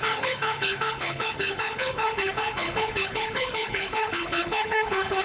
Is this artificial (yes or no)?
yes